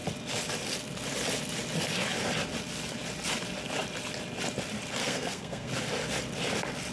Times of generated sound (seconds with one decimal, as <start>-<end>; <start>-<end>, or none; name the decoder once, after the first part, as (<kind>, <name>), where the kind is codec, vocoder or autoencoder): 5.0-5.7 (codec, SNAC)